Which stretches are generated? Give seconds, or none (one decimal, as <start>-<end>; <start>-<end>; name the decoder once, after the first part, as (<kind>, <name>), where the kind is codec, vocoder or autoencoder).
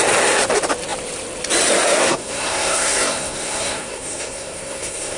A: 2.0-5.2 (codec, SNAC)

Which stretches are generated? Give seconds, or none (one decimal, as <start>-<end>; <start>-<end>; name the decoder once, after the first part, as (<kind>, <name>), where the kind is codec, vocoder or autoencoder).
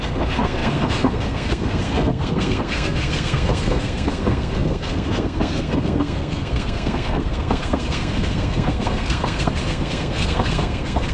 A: 0.0-11.1 (codec, SNAC)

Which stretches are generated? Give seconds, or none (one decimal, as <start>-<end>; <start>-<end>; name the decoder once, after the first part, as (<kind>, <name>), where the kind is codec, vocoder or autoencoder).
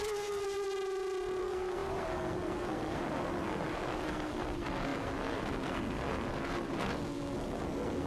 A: 0.0-0.4 (codec, SNAC); 1.4-8.1